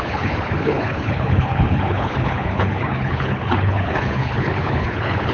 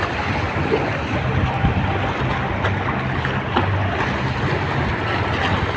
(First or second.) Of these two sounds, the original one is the second